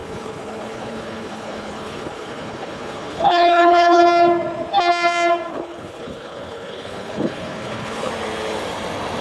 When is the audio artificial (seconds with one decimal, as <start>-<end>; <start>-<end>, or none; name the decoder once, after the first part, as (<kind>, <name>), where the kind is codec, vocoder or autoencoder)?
0.0-4.0 (codec, HILCodec); 5.5-8.1